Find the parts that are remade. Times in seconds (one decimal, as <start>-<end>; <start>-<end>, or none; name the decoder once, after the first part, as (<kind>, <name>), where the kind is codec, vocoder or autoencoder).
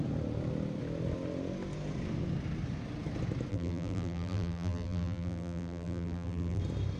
3.5-6.6 (vocoder, BigVGAN v2)